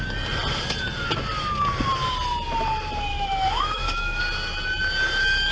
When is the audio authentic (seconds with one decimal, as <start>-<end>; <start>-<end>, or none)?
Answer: 0.0-3.1; 4.2-5.5

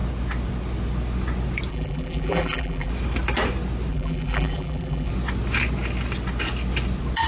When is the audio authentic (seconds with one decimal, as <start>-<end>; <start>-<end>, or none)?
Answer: 0.0-1.7; 2.9-3.9; 5.1-7.3

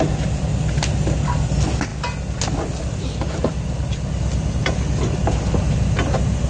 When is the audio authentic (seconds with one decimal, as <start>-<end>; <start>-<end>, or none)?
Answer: 0.0-6.5

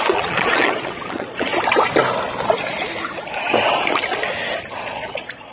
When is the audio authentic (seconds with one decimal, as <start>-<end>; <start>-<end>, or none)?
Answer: 1.5-4.8

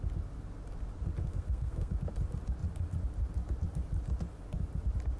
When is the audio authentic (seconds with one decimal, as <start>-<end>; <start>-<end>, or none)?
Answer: 0.0-1.3; 1.9-5.2

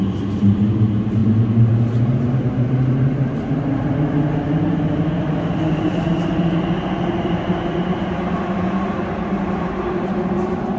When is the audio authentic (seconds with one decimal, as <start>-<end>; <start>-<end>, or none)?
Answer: 0.0-10.8

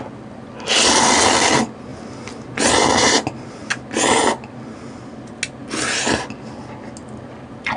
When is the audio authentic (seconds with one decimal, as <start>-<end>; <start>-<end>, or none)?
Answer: 0.0-7.8